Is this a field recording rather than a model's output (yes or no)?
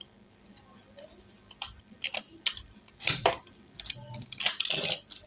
yes